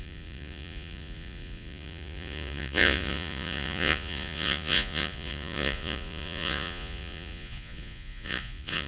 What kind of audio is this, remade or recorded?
remade